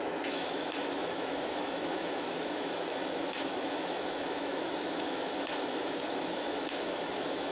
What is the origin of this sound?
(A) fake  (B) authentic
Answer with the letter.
A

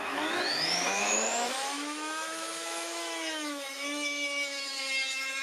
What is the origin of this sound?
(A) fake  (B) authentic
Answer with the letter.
A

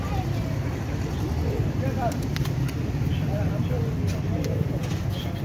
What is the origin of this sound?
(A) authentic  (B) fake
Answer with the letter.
A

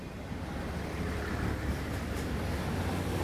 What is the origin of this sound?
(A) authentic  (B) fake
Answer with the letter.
A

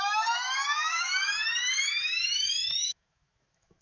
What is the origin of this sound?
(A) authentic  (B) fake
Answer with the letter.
B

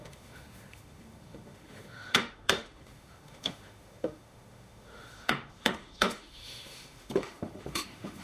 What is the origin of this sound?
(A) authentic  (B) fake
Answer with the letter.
B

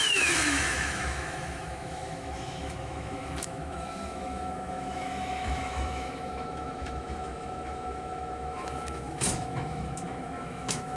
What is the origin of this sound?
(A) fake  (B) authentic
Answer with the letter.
A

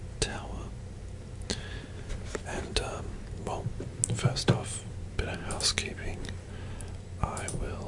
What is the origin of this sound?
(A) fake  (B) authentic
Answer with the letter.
B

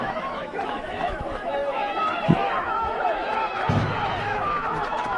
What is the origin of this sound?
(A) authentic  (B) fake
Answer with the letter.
B